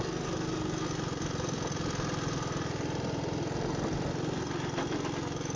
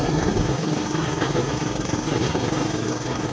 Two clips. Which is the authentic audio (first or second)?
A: first